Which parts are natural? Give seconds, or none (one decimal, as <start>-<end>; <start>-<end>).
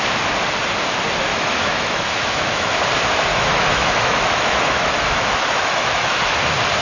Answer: 0.0-1.3; 2.7-3.3; 6.2-6.8